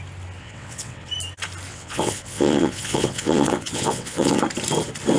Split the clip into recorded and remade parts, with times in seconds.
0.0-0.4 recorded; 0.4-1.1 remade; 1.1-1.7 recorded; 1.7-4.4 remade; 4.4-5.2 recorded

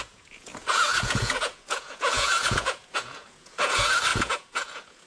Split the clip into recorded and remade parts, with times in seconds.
0.0-5.1 remade

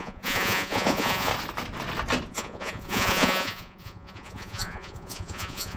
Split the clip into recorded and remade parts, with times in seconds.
0.0-1.3 remade; 1.3-2.3 recorded; 2.3-5.8 remade